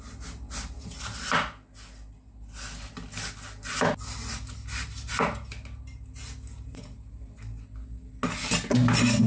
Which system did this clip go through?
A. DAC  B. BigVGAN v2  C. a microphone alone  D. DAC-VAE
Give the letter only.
C